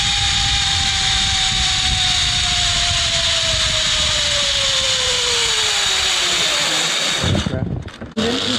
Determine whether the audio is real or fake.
real